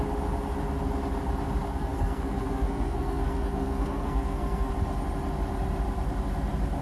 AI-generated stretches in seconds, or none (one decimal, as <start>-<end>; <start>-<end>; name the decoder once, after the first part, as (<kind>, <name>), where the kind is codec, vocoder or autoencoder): 1.7-4.7 (codec, SNAC)